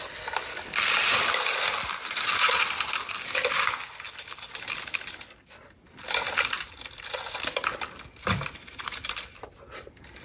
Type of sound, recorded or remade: recorded